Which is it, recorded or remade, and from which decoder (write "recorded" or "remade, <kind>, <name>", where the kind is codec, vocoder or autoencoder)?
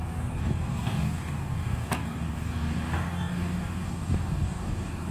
remade, codec, DAC